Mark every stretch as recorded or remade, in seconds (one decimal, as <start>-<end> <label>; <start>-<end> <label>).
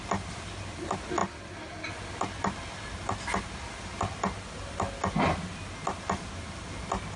0.0-7.2 recorded